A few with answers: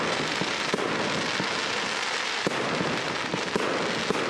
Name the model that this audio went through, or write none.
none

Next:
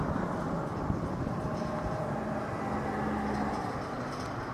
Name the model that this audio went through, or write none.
none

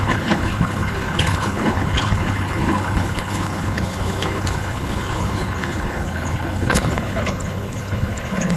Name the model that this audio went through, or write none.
codec, HILCodec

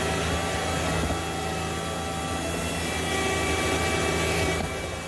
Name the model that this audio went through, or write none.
none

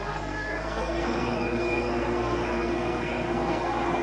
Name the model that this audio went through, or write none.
codec, SNAC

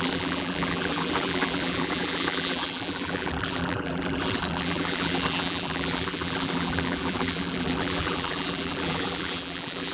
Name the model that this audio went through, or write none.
vocoder, BigVGAN v2